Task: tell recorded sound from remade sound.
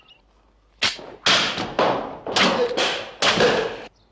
recorded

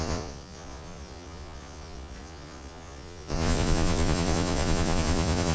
remade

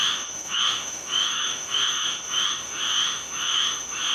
remade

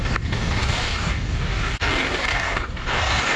remade